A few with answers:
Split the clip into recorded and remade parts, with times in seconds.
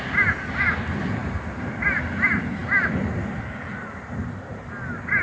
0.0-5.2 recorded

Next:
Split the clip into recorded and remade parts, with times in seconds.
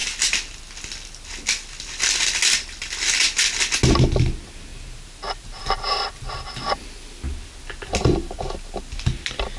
0.0-4.7 recorded; 4.7-5.6 remade; 5.6-9.6 recorded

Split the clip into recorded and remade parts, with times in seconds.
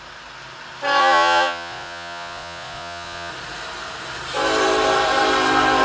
0.0-1.0 recorded; 1.0-3.3 remade; 3.3-5.8 recorded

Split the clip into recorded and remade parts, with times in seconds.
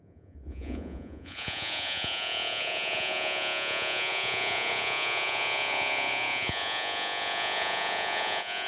0.0-8.7 remade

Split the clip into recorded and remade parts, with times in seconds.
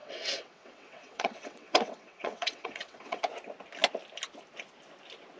0.0-3.2 remade; 3.2-5.4 recorded